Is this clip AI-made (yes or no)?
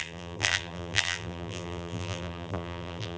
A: yes